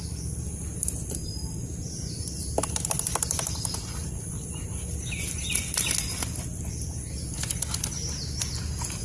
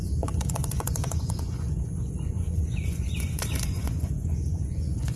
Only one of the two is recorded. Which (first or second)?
first